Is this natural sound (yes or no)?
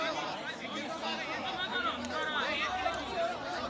yes